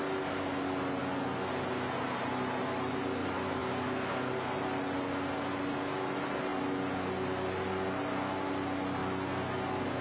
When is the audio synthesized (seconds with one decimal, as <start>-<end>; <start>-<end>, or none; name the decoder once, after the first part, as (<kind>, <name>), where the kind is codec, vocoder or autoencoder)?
none

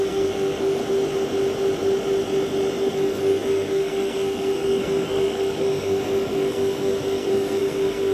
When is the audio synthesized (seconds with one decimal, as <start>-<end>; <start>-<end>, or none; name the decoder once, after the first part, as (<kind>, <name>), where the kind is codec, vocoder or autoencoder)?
0.0-0.8 (codec, SNAC); 2.9-8.1